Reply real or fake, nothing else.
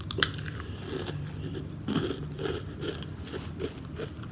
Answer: real